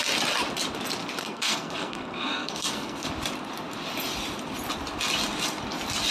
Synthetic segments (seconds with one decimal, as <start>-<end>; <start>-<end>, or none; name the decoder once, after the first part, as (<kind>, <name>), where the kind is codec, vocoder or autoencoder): 1.2-3.1 (codec, SNAC)